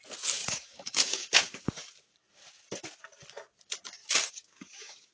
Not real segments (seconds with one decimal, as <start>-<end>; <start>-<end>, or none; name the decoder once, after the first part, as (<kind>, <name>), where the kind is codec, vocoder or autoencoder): 0.4-1.7 (codec, DAC); 4.0-5.1